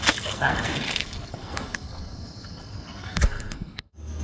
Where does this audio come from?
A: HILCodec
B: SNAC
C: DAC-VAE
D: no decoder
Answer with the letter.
B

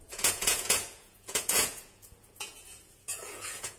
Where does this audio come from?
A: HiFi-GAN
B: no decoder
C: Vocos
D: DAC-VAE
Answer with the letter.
C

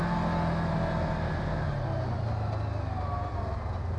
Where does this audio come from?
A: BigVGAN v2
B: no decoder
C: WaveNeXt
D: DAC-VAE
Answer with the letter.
B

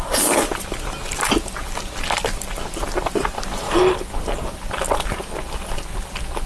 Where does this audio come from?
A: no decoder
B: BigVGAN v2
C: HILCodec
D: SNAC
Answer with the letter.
A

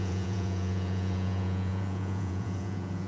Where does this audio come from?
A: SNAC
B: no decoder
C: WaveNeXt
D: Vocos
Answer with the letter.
D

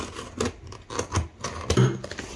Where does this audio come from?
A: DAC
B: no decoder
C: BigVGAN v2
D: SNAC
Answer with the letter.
B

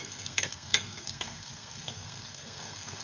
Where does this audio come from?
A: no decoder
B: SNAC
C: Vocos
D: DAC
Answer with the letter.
B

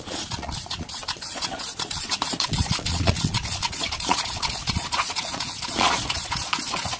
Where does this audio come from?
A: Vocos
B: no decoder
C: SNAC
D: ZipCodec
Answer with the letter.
A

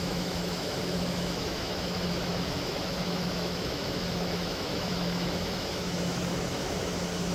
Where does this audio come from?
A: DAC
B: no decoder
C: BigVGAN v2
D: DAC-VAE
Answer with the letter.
D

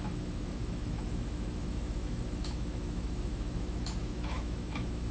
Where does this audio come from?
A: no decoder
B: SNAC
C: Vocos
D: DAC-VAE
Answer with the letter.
D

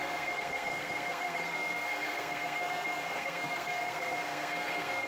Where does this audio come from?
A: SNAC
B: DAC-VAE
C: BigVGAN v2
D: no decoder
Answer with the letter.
A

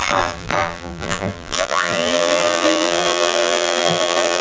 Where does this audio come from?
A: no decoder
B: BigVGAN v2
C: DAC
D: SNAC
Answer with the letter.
B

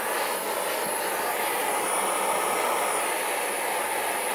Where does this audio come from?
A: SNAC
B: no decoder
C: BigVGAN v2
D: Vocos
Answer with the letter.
B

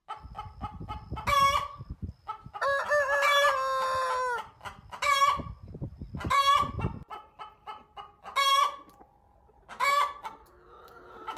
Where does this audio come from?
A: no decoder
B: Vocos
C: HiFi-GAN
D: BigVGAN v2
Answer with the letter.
A